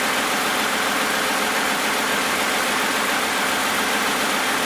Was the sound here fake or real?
real